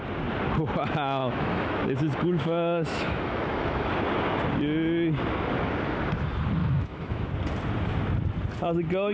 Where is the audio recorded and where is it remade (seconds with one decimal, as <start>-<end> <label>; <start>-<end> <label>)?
0.0-1.2 recorded; 1.2-3.9 remade; 3.9-6.6 recorded; 6.6-7.3 remade; 7.3-9.1 recorded